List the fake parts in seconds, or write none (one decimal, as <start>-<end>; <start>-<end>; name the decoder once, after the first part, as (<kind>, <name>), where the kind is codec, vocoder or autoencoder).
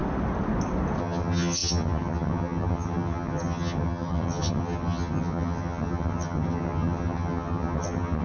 1.0-8.2 (vocoder, HiFi-GAN)